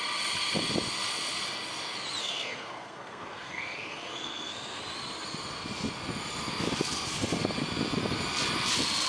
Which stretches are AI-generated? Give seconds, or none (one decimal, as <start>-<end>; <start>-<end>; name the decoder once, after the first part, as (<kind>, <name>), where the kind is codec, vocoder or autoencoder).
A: 2.2-4.8 (codec, SNAC)